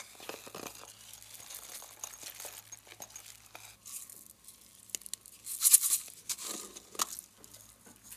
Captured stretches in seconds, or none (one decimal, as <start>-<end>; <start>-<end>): 0.0-8.2